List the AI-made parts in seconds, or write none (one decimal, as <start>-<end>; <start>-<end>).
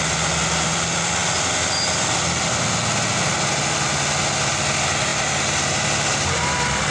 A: none